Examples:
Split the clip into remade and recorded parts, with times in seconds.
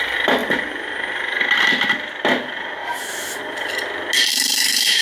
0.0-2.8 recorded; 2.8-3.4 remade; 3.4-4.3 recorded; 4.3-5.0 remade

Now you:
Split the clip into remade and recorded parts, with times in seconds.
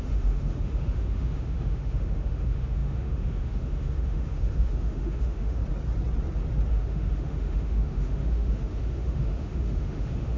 0.0-5.6 remade; 5.6-6.7 recorded; 6.7-10.4 remade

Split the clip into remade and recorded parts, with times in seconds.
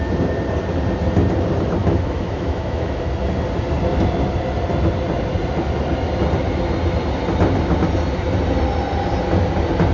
0.0-1.8 recorded; 1.8-3.0 remade; 3.0-9.9 recorded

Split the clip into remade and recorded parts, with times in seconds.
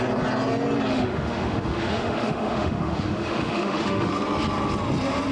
0.0-0.9 recorded; 0.9-4.1 remade; 4.1-5.3 recorded